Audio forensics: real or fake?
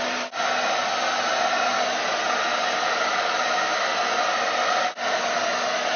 real